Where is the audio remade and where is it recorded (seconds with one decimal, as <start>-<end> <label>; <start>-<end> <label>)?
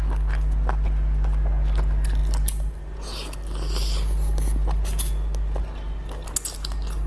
0.0-7.1 recorded